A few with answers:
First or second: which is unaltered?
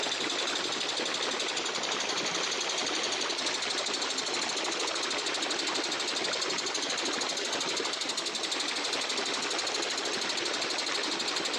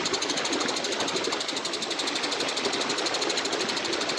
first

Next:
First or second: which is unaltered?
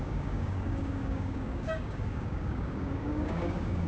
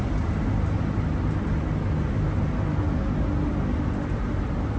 second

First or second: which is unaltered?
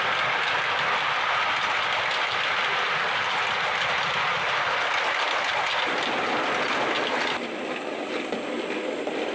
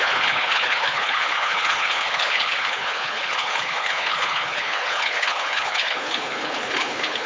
first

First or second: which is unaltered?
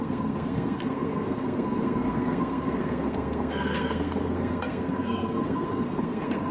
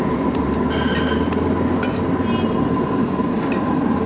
second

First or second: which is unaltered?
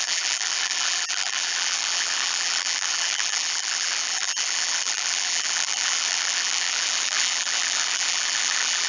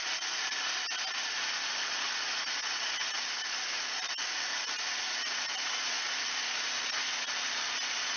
second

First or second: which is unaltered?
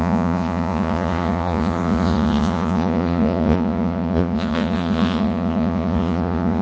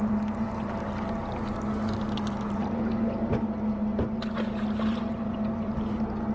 second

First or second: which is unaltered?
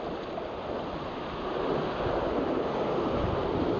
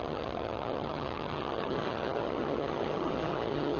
first